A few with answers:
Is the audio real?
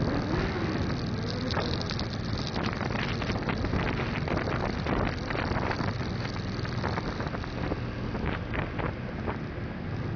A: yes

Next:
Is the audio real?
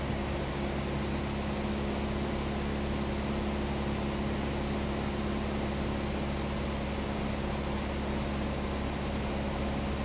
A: yes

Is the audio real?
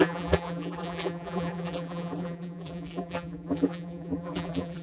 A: no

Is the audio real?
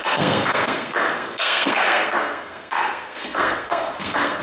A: no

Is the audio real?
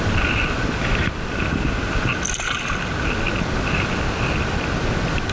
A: yes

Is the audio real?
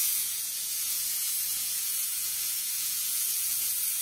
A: no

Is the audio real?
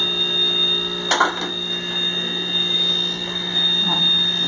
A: yes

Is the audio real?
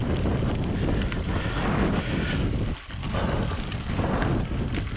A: yes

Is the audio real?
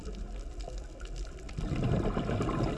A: yes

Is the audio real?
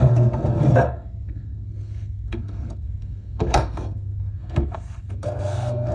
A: no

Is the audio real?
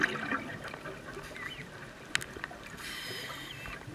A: yes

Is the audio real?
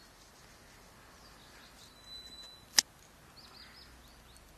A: yes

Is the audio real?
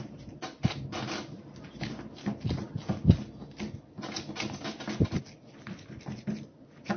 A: yes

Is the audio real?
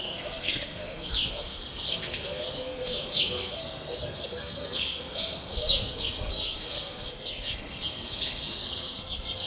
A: no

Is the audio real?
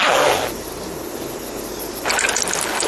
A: yes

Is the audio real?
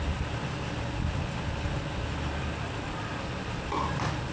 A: yes